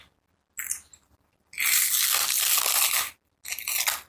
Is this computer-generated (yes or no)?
no